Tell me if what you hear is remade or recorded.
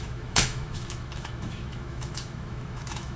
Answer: remade